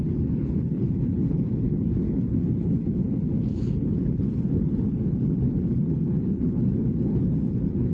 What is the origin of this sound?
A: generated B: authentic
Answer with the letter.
A